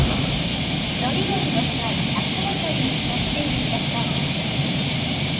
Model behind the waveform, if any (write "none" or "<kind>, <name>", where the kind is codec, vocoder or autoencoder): vocoder, BigVGAN v2